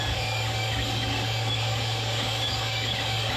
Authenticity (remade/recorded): remade